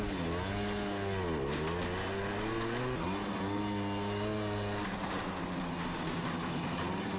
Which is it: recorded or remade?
recorded